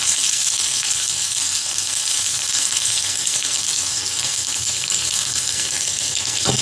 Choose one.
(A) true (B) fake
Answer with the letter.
B